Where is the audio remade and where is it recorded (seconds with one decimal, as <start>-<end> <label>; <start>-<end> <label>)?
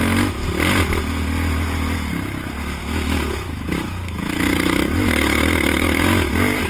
0.0-2.8 recorded; 2.8-6.3 remade; 6.3-6.7 recorded